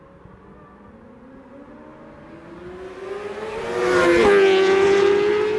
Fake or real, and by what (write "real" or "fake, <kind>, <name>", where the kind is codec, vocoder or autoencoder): real